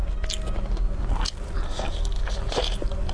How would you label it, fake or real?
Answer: real